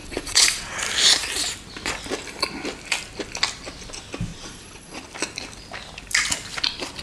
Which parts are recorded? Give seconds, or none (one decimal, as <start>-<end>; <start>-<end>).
0.8-4.3; 5.0-7.0